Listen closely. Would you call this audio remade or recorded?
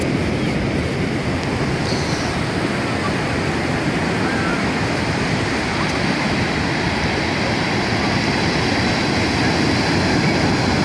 recorded